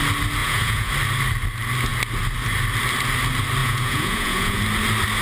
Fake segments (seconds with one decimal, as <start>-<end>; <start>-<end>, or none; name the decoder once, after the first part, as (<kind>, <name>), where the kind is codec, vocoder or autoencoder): 0.4-0.9 (vocoder, Vocos); 3.6-4.6